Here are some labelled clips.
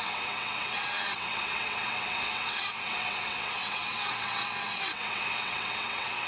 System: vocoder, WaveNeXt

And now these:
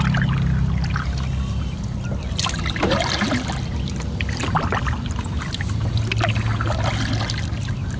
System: none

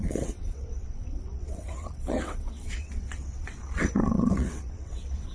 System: vocoder, WaveNeXt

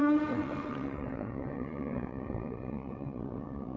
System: vocoder, WaveNeXt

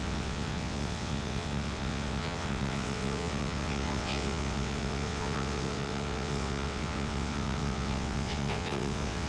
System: vocoder, WaveNeXt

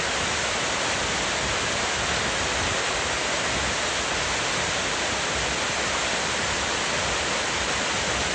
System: none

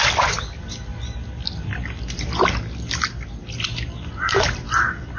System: none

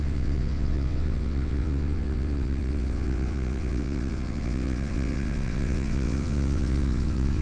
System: vocoder, WaveNeXt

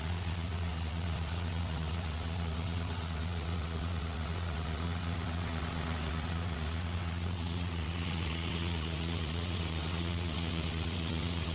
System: vocoder, WaveNeXt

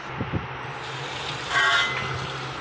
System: none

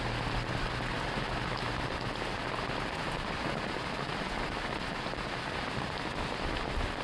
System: none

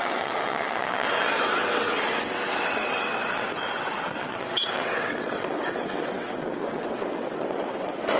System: vocoder, WaveNeXt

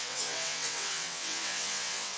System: vocoder, WaveNeXt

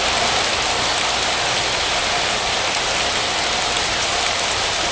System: none